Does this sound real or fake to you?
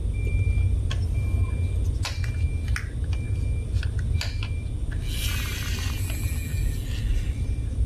real